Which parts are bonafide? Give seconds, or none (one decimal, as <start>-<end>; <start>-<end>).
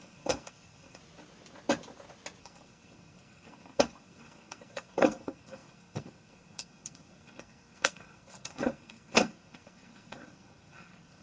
1.0-2.4